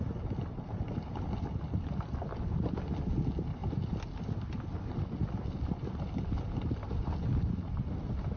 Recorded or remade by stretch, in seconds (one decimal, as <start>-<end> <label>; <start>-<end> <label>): 0.0-8.4 recorded